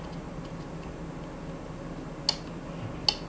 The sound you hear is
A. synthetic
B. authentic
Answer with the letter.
B